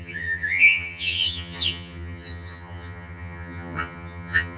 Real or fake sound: fake